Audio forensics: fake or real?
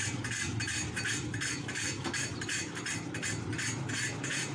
real